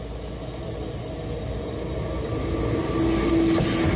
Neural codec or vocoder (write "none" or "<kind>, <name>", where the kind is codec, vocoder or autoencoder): none